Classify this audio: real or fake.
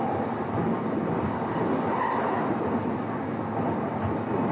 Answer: real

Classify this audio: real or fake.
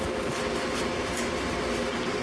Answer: real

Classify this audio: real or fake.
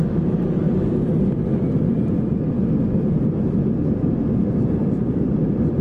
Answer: real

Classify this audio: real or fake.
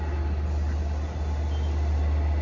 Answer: real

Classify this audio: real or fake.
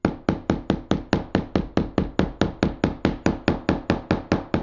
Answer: real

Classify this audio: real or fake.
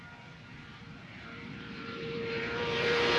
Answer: fake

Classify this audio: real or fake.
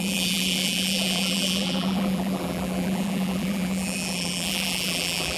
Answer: fake